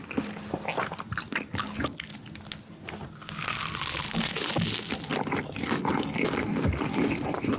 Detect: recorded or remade recorded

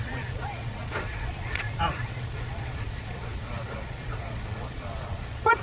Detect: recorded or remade remade